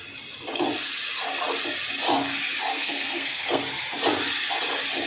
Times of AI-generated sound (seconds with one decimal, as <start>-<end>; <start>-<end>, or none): 2.7-3.6